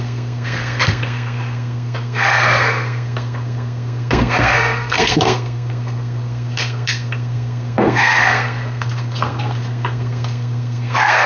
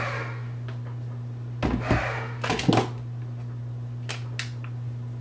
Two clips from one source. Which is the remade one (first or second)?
first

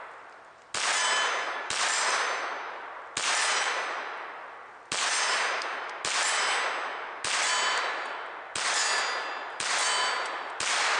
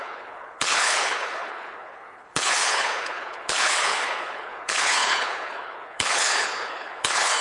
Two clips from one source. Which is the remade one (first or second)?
second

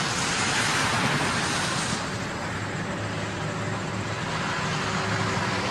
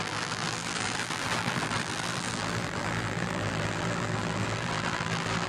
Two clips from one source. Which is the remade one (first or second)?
second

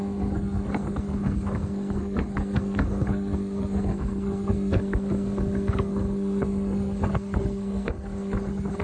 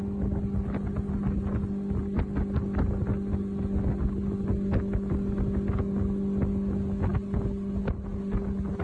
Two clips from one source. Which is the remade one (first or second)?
first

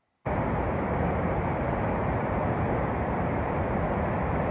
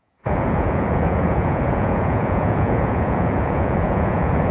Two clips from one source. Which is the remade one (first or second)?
second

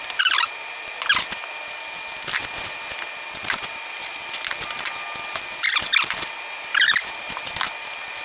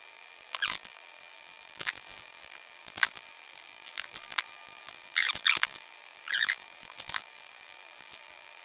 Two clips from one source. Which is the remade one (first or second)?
second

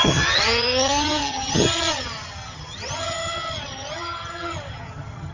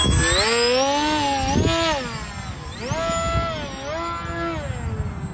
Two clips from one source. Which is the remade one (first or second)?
first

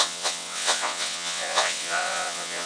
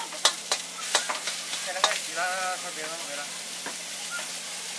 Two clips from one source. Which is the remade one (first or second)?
first